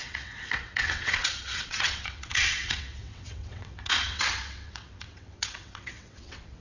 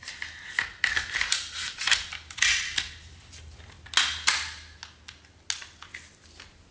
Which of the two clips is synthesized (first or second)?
first